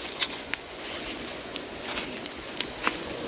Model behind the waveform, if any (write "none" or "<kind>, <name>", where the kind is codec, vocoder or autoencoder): vocoder, Vocos